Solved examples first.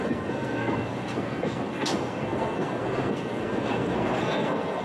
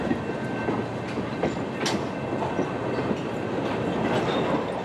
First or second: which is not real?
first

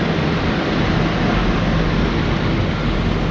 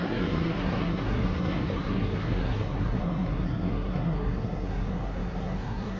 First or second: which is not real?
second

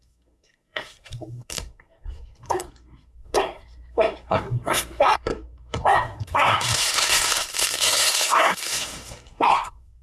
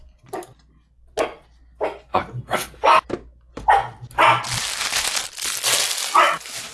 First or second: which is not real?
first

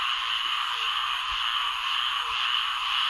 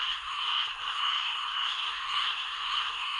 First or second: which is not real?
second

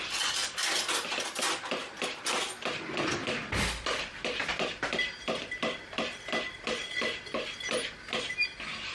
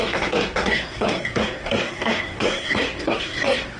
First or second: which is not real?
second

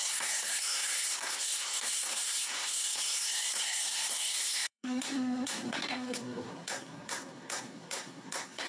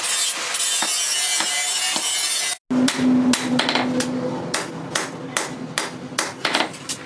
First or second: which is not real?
first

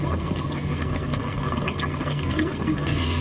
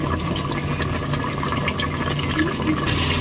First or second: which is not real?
first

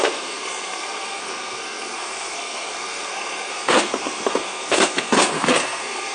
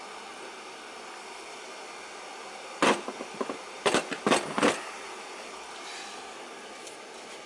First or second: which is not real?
first